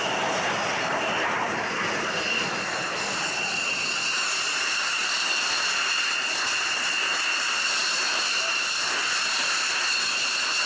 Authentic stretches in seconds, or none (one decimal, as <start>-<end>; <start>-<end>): 0.0-5.0; 6.3-10.7